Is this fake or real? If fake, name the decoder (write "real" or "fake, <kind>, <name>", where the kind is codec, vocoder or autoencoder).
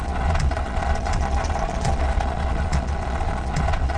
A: fake, vocoder, Vocos